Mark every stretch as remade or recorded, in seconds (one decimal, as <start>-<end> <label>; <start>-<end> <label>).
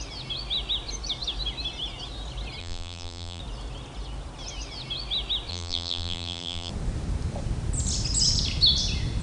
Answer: 0.0-2.6 recorded; 2.6-3.4 remade; 3.4-5.5 recorded; 5.5-6.7 remade; 6.7-9.2 recorded